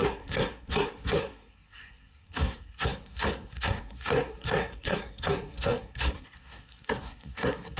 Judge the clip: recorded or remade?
remade